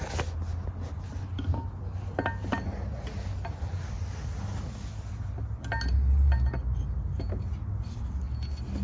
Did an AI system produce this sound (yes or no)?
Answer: no